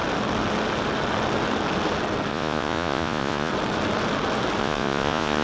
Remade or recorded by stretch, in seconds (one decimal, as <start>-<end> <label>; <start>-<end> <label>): 0.0-2.3 recorded; 2.3-3.5 remade; 3.5-4.6 recorded; 4.6-5.4 remade